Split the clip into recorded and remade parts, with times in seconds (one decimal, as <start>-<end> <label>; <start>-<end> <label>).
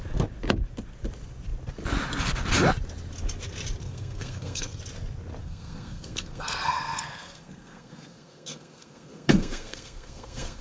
0.0-3.8 recorded; 3.8-4.8 remade; 4.8-5.4 recorded; 5.4-10.6 remade